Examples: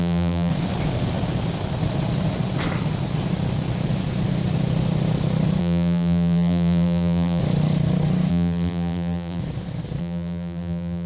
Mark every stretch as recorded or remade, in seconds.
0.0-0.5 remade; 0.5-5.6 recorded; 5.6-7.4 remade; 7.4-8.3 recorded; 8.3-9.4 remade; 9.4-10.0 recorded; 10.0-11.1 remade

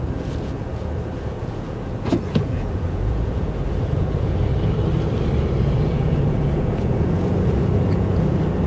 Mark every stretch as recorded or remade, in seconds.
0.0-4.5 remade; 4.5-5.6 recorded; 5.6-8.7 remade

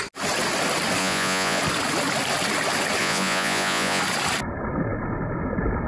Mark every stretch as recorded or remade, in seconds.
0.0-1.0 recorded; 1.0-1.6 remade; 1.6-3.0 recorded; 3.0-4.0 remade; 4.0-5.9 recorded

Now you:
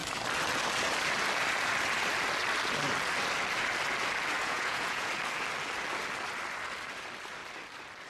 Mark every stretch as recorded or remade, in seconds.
0.0-4.4 recorded; 4.4-5.1 remade; 5.1-8.1 recorded

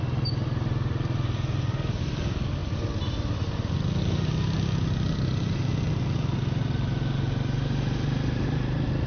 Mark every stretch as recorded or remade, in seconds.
0.0-9.1 recorded

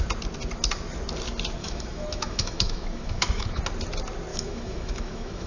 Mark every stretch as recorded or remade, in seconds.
0.0-1.6 recorded; 1.6-3.6 remade; 3.6-4.3 recorded; 4.3-5.5 remade

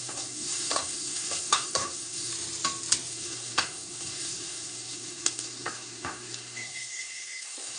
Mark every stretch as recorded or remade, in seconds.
0.0-2.3 remade; 2.3-3.1 recorded; 3.1-7.8 remade

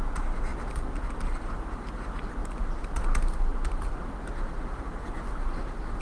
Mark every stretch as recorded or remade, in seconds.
0.0-6.0 recorded